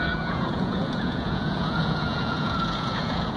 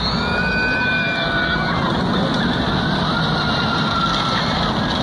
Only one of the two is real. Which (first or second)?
second